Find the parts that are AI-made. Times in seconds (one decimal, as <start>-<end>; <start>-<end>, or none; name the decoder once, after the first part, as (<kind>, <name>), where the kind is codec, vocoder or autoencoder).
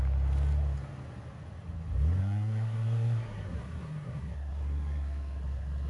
2.2-5.9 (codec, SNAC)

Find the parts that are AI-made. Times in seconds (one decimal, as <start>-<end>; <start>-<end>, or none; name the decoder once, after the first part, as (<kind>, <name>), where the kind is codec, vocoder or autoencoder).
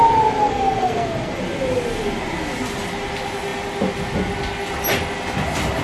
0.4-1.4 (codec, SNAC)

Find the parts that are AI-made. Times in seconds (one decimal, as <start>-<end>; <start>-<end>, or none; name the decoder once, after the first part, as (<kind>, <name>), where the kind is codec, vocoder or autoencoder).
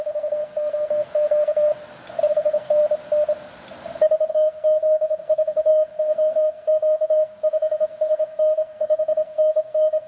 0.0-1.7 (codec, SNAC); 2.3-2.8; 4.3-10.1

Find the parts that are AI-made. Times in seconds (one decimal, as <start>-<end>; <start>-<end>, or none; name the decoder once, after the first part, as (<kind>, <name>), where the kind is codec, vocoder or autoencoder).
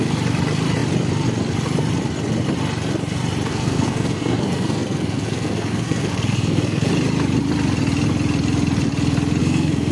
3.5-6.9 (codec, SNAC); 9.4-9.9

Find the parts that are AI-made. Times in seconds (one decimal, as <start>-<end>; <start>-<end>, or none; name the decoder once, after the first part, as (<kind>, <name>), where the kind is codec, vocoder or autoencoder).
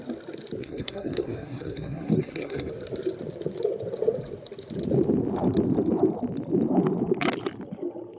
0.6-2.7 (codec, SNAC)